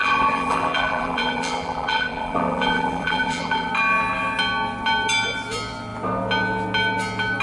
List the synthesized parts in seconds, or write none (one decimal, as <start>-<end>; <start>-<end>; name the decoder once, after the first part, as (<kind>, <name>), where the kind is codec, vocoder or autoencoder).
0.0-3.7 (vocoder, BigVGAN v2)